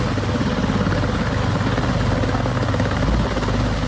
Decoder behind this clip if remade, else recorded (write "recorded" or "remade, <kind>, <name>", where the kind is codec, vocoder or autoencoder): recorded